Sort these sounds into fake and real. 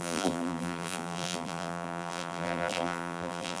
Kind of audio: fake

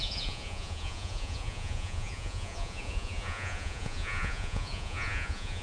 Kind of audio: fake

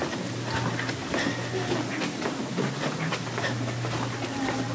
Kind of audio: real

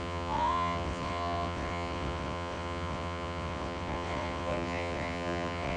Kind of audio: fake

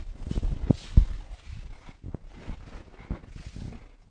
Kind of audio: real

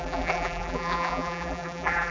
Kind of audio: fake